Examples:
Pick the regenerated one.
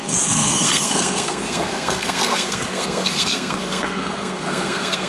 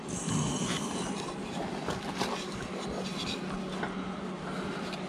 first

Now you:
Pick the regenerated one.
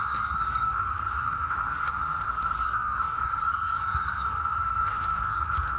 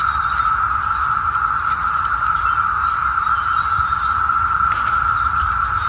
first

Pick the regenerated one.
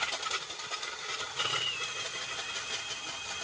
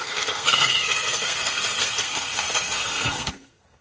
second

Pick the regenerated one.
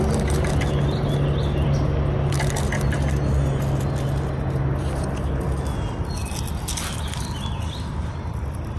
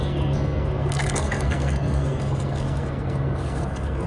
second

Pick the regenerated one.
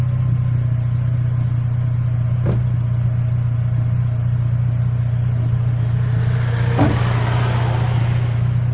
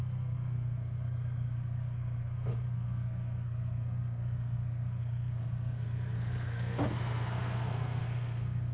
second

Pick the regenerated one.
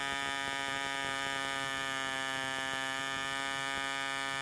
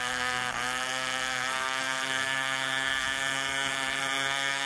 second